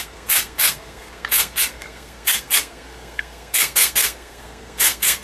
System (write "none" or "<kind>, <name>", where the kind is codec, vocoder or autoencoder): codec, SNAC